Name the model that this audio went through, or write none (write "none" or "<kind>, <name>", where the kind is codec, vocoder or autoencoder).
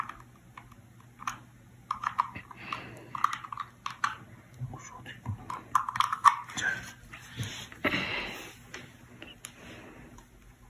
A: none